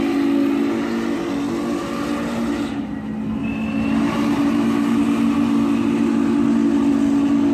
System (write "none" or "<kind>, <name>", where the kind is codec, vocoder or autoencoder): none